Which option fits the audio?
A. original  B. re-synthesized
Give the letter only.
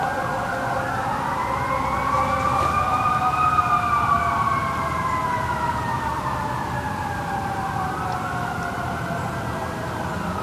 A